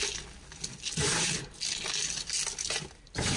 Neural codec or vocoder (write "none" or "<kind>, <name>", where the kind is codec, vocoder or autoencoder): none